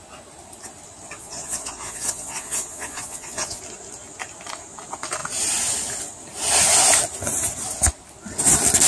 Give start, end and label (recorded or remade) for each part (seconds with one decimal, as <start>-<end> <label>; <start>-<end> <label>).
0.0-1.2 recorded; 1.2-3.6 remade; 3.6-8.9 recorded